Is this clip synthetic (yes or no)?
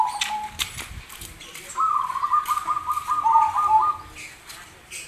no